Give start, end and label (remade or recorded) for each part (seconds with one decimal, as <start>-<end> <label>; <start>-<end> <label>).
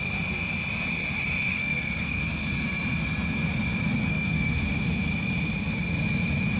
0.0-1.5 recorded; 1.5-2.2 remade; 2.2-4.0 recorded; 4.0-4.6 remade; 4.6-6.6 recorded